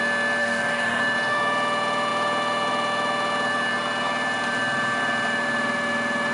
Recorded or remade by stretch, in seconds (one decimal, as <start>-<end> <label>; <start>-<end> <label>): 0.0-0.4 recorded; 0.4-1.0 remade; 1.0-6.3 recorded